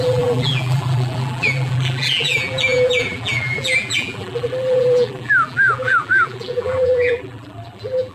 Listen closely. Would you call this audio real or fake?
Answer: fake